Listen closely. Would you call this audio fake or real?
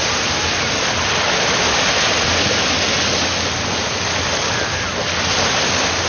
real